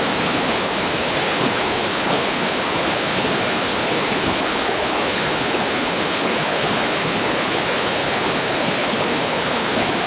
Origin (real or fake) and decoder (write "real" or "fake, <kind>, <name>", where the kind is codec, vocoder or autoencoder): fake, codec, HILCodec